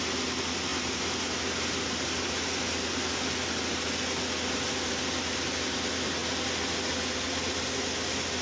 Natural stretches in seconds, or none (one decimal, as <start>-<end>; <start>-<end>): 0.0-8.4